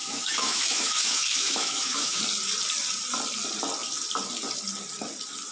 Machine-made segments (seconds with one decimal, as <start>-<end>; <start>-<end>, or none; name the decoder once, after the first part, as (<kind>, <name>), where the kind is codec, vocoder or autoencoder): 0.0-2.2 (autoencoder, DAC-VAE)